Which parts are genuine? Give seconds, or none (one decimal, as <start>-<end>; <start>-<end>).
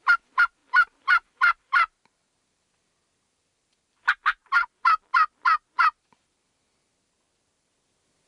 4.4-5.8